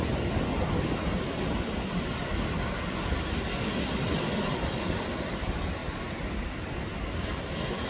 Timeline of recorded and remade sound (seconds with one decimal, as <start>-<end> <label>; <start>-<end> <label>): 0.0-7.9 recorded